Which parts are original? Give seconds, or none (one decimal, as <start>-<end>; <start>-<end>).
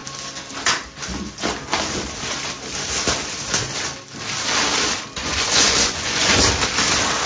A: 0.0-5.2; 6.4-7.3